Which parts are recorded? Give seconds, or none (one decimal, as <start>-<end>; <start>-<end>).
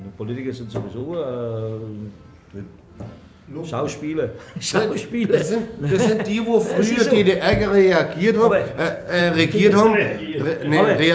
0.0-5.4; 6.2-8.1; 9.2-11.1